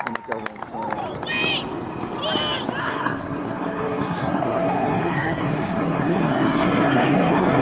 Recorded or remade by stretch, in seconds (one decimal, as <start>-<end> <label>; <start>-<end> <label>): 0.0-2.8 recorded; 2.8-7.6 remade